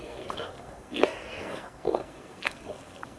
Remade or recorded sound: remade